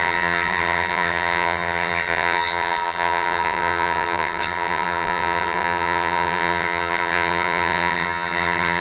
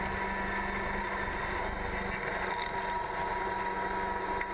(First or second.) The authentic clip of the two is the second